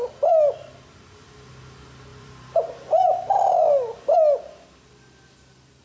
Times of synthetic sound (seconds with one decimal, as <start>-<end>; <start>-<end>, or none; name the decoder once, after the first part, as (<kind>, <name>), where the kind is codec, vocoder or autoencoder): 2.1-2.7 (vocoder, BigVGAN v2)